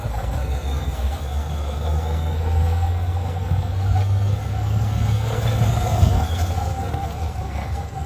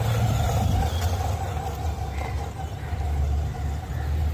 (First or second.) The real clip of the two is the second